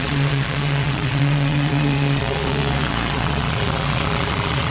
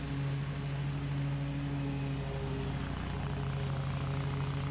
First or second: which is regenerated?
first